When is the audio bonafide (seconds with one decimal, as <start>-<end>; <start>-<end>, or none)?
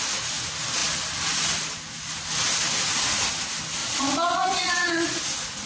0.0-3.8; 5.2-5.7